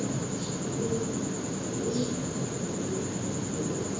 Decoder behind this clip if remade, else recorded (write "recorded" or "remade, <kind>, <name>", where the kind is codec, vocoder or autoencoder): recorded